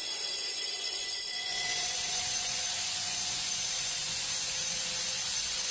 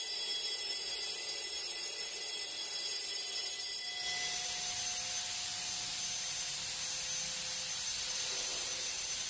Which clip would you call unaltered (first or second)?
second